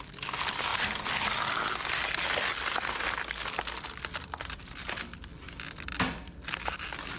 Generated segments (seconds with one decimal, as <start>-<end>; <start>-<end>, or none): none